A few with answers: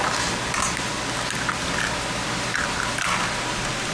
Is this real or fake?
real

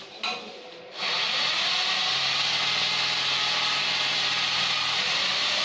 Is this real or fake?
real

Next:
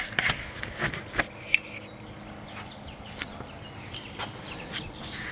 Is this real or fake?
real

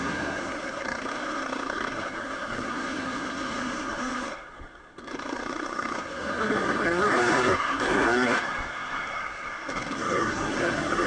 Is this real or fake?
fake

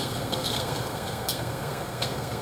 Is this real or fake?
fake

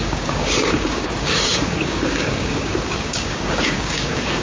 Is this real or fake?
fake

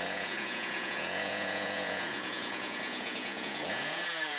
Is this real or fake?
fake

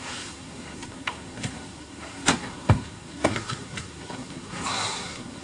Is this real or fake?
fake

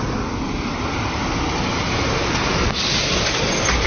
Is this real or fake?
real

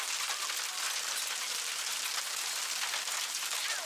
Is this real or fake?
real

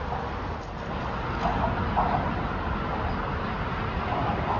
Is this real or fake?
real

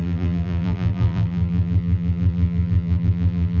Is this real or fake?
fake